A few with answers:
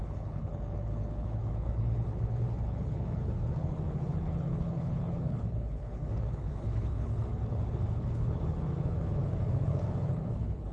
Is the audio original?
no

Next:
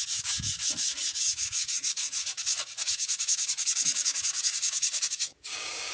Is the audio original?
no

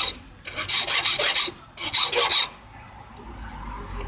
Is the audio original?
yes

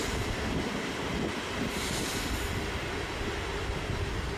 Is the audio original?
yes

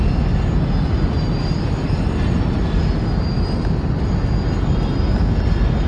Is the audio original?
yes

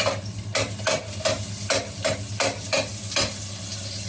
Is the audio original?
yes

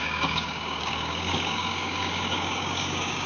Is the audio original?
no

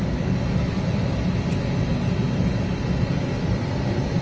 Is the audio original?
no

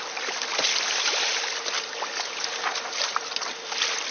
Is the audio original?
yes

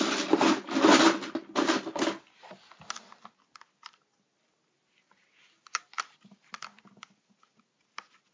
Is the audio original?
yes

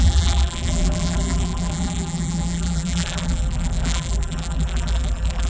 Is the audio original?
no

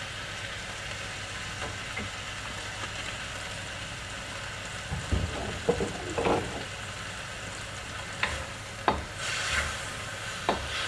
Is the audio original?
yes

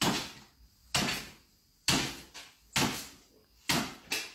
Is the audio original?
yes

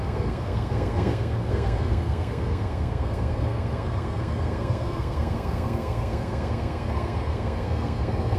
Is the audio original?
no